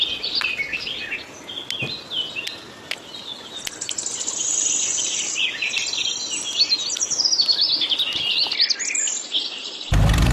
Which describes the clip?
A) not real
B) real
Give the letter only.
B